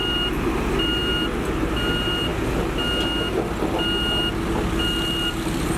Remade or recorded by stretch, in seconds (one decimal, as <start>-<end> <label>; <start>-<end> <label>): 0.0-5.8 recorded